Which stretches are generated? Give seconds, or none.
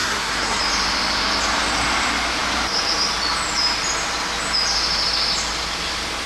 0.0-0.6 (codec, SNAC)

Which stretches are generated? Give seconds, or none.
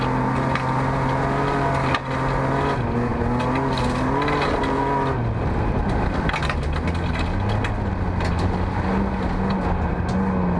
none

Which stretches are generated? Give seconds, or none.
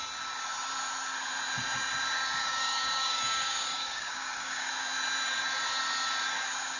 2.4-4.7 (codec, DAC)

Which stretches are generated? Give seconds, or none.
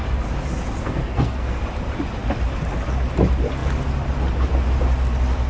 0.8-1.6 (codec, SNAC)